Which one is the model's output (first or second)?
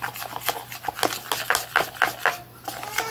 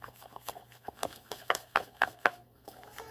second